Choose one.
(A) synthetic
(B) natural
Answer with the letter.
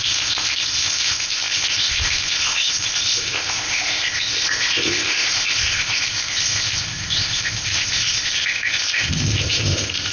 A